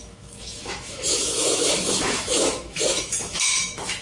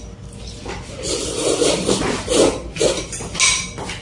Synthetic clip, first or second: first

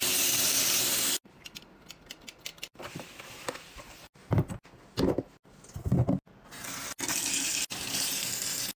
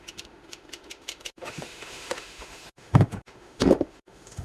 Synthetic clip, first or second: second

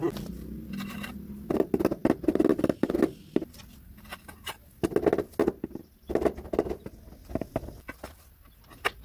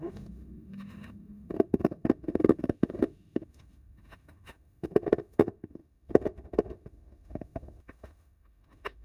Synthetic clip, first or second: second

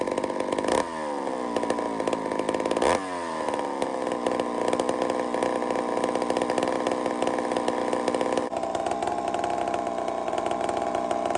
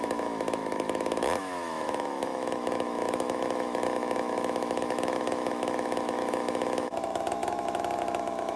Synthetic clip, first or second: second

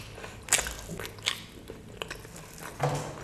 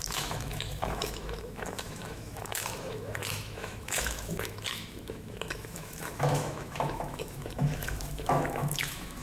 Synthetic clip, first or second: second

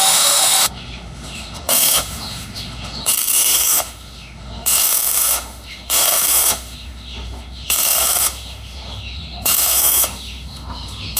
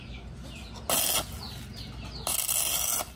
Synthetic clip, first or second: first